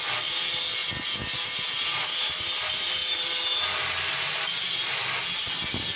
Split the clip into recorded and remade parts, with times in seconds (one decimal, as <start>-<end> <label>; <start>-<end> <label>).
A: 0.0-6.0 recorded